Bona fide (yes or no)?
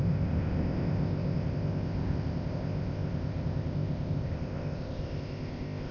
no